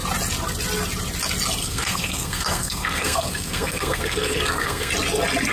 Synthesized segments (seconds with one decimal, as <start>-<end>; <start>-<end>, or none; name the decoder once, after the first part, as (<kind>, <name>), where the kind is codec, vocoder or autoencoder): 1.6-4.9 (codec, SNAC)